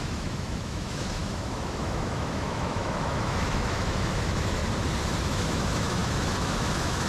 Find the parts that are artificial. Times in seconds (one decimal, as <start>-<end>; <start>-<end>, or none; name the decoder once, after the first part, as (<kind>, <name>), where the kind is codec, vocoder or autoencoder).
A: 0.0-4.6 (autoencoder, DAC-VAE); 5.2-7.1